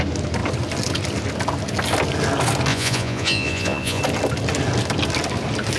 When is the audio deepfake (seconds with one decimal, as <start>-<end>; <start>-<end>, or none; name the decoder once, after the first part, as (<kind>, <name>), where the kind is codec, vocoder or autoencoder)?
2.7-4.0 (vocoder, Vocos)